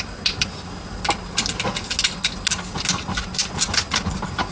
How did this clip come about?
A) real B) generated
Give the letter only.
A